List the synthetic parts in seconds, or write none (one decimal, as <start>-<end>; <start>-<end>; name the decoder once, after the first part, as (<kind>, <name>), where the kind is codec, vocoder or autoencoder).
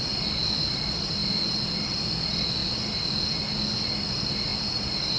none